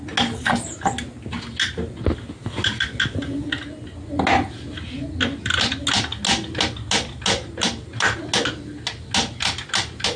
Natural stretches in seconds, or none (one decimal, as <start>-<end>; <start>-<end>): 0.0-10.2